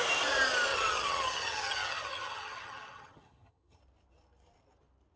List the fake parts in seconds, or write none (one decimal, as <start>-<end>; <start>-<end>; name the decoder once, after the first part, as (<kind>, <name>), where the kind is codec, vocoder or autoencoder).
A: 0.7-3.8 (vocoder, HiFi-GAN)